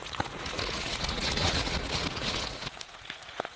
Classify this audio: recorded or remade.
remade